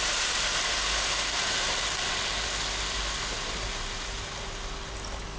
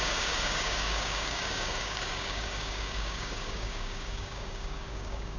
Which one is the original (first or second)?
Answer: first